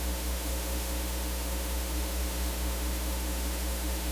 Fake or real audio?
fake